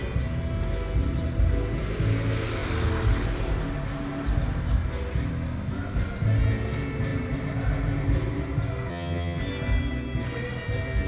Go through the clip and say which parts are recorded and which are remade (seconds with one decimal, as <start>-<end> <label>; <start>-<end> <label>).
0.0-8.9 recorded; 8.9-9.4 remade; 9.4-11.1 recorded